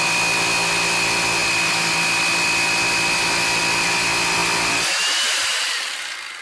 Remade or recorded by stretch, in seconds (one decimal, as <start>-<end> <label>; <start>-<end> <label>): 0.0-6.4 recorded